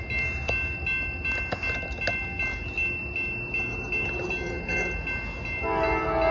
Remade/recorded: recorded